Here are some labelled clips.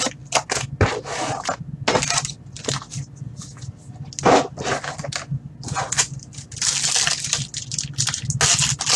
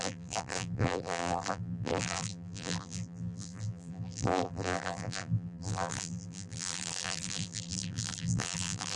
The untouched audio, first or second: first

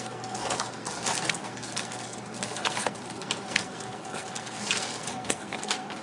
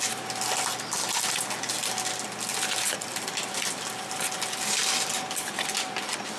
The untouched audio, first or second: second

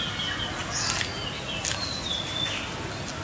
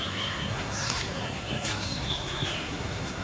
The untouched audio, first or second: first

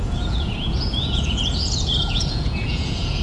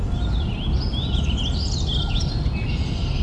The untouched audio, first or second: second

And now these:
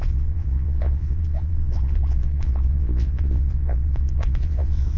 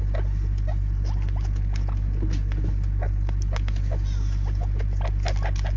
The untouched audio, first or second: second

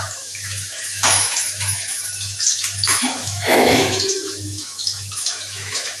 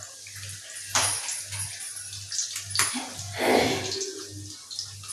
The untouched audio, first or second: second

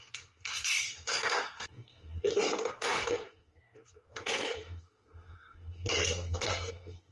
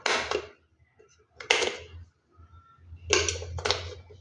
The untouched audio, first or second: second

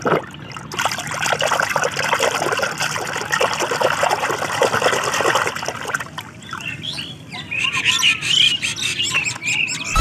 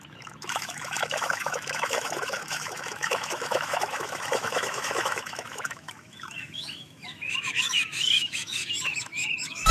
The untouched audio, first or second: first